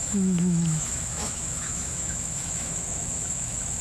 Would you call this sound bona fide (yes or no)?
no